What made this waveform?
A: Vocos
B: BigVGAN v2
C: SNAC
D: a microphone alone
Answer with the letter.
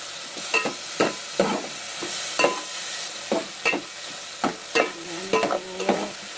D